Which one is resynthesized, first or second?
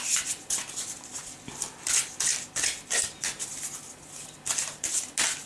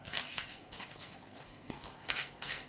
second